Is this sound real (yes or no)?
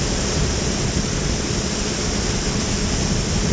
yes